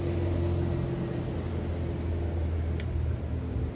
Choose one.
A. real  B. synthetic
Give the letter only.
A